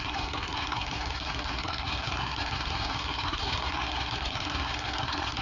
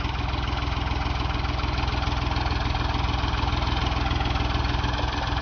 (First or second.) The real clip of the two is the second